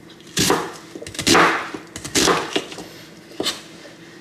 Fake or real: real